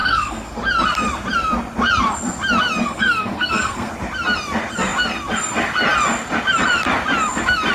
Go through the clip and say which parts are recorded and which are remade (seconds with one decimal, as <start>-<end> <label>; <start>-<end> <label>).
0.0-0.6 remade; 0.6-2.8 recorded; 2.8-3.9 remade; 3.9-7.7 recorded